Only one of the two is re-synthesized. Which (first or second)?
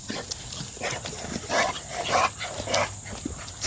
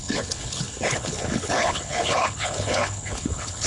second